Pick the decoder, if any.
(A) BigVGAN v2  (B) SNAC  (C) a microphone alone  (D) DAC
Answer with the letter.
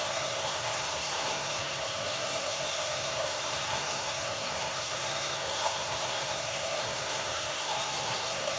B